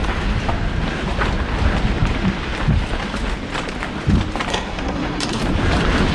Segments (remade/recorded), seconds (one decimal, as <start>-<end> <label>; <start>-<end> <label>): 0.0-4.5 recorded; 4.5-5.4 remade; 5.4-6.1 recorded